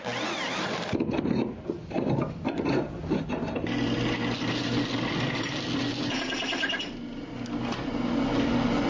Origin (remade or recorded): recorded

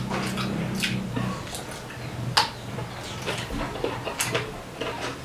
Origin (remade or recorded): recorded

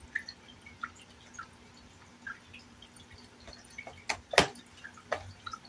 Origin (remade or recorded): recorded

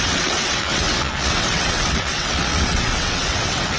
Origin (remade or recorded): remade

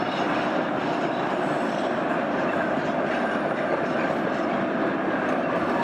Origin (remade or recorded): remade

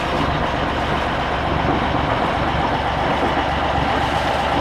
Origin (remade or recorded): recorded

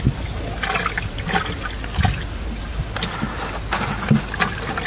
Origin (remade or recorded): recorded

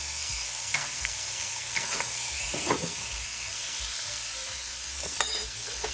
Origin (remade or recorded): remade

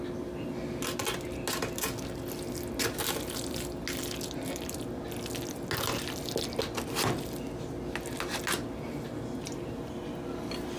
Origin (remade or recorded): recorded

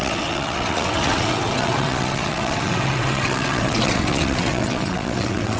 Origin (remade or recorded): remade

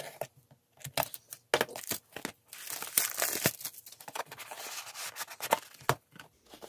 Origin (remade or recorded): recorded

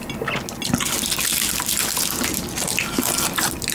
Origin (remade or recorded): recorded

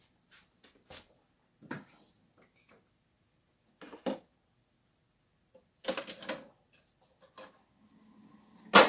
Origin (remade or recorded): recorded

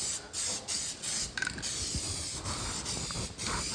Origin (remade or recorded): recorded